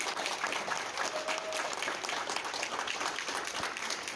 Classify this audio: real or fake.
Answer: real